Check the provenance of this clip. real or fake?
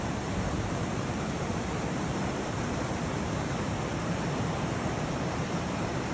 fake